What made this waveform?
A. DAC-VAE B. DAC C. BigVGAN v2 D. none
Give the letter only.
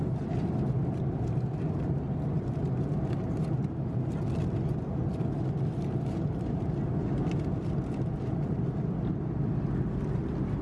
D